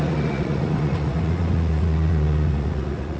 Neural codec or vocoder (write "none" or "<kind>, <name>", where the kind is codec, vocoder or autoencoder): vocoder, Vocos